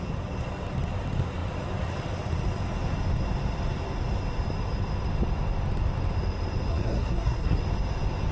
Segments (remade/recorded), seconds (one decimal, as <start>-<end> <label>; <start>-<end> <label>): 0.0-6.7 recorded; 6.7-7.6 remade; 7.6-8.3 recorded